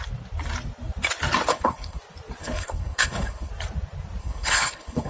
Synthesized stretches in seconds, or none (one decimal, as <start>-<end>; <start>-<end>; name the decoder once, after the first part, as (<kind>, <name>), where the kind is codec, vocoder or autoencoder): 1.5-2.0 (codec, HILCodec); 2.4-3.5; 4.2-5.1